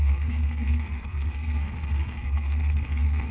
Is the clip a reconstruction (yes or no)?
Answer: yes